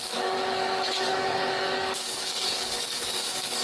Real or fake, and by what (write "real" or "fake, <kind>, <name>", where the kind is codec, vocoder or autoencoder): fake, codec, DAC